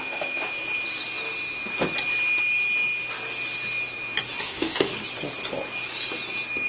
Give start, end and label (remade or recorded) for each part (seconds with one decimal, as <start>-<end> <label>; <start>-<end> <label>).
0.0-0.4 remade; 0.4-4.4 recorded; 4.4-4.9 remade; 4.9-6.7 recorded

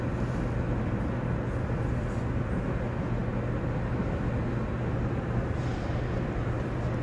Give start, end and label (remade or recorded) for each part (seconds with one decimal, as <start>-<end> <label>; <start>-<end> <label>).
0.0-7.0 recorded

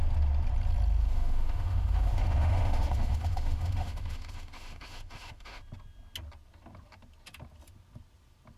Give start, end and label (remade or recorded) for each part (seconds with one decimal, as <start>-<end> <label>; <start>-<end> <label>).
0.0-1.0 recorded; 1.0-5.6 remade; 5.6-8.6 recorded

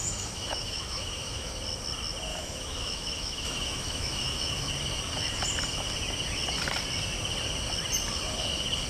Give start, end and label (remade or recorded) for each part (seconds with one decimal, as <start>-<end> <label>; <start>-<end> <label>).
0.0-1.5 remade; 1.5-2.3 recorded; 2.3-4.7 remade; 4.7-8.9 recorded

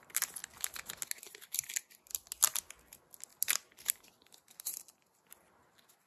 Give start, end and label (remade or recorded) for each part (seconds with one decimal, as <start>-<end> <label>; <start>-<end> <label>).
0.0-6.1 recorded